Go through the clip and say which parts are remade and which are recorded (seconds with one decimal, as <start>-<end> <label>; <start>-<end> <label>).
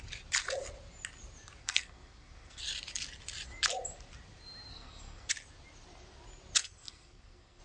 0.0-1.6 recorded; 1.6-2.6 remade; 2.6-4.7 recorded; 4.7-5.3 remade; 5.3-6.6 recorded; 6.6-7.6 remade